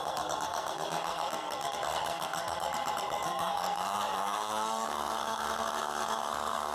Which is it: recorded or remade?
remade